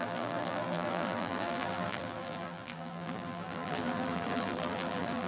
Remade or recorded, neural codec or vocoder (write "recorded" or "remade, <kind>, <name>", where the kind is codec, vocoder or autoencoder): remade, vocoder, BigVGAN v2